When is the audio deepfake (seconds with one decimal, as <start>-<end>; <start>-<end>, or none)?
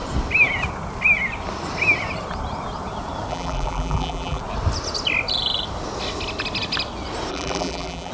3.3-4.4; 7.3-8.1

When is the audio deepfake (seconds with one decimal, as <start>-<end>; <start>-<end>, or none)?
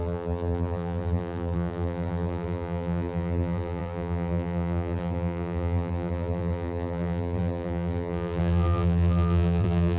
0.0-10.0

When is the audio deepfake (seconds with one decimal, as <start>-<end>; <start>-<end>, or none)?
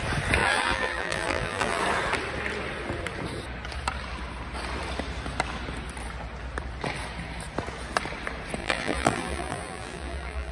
0.4-1.8; 8.6-10.5